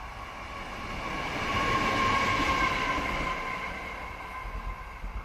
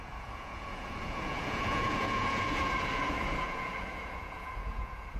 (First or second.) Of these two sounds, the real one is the first